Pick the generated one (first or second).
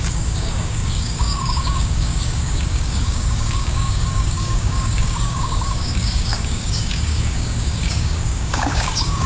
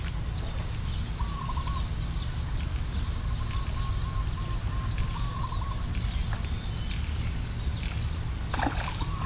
first